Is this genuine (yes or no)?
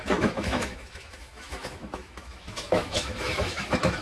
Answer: no